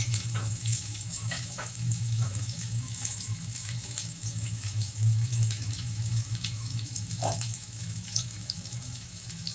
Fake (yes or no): yes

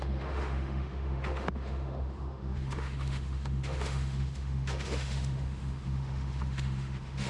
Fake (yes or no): yes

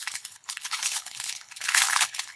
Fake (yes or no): yes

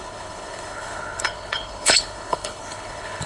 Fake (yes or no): yes